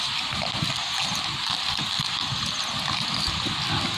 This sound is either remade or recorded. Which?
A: recorded